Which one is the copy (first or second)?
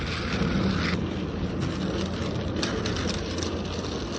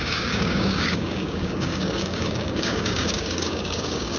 second